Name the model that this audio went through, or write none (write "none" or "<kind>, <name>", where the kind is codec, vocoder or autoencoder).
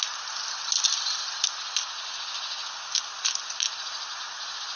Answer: none